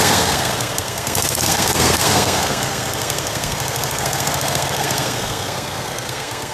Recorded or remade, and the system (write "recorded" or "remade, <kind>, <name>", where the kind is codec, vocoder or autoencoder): remade, codec, SNAC